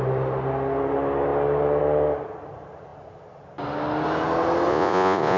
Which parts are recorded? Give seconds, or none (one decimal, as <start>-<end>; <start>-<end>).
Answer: 0.0-4.7